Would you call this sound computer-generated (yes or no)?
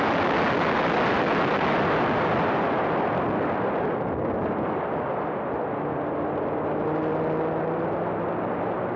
no